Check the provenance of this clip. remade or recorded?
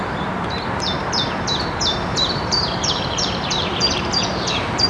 remade